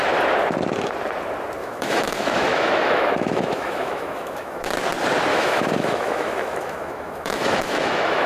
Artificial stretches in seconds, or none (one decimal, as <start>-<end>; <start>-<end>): 1.6-4.7; 5.3-8.3